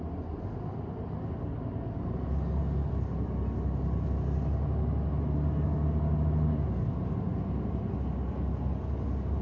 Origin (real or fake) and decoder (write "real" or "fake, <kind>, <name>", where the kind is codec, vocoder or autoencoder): real